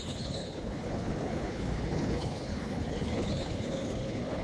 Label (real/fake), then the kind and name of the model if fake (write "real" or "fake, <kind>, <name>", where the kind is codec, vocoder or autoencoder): fake, codec, HILCodec